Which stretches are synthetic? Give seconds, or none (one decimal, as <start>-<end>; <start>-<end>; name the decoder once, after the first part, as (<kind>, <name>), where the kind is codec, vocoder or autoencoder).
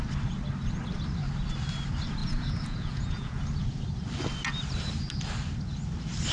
2.2-3.4 (vocoder, Vocos)